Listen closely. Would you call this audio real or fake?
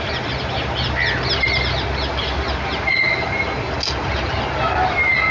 real